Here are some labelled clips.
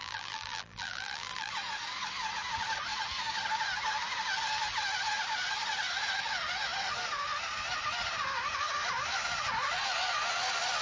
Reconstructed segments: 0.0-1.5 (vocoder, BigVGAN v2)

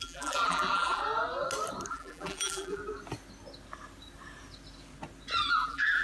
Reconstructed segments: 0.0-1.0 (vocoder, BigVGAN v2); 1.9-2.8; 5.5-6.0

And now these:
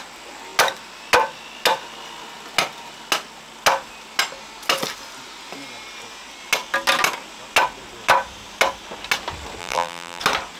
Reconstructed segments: 9.6-10.2 (vocoder, BigVGAN v2)

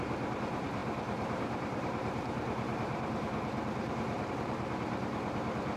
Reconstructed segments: 0.0-5.8 (vocoder, BigVGAN v2)

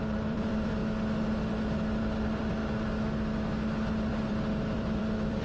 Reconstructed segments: 0.0-0.8 (vocoder, BigVGAN v2); 2.0-2.6; 4.1-5.4